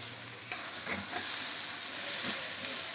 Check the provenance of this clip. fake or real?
real